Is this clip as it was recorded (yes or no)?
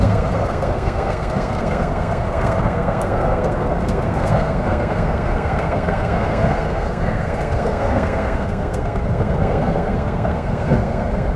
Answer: no